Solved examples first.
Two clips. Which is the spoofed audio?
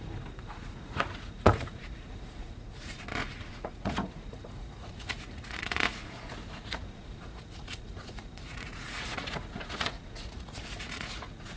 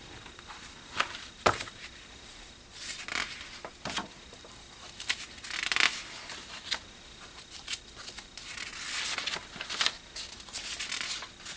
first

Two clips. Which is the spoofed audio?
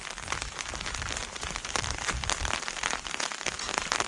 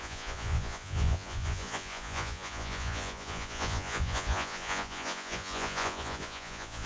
second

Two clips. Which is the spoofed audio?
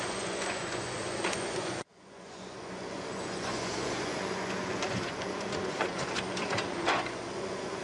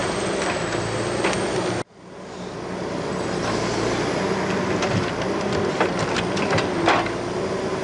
first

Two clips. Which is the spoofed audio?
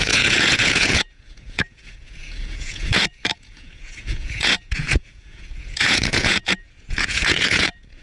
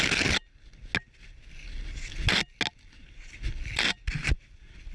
first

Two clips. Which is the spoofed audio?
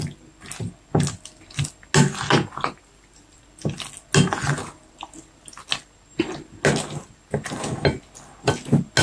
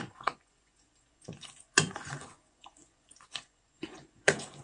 second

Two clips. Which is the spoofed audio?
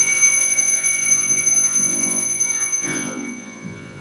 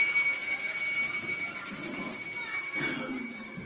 first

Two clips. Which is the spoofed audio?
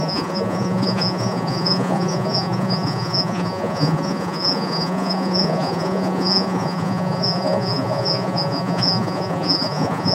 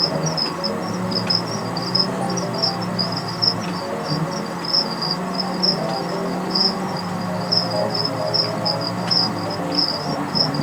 first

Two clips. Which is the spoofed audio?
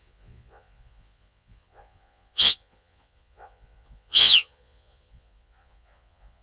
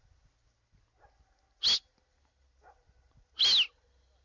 first